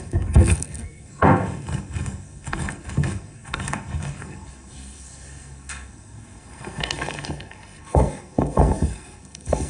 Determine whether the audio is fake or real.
fake